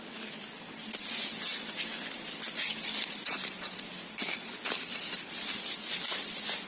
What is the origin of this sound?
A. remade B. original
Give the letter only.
B